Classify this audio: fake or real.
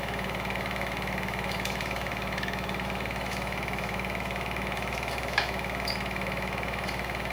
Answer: fake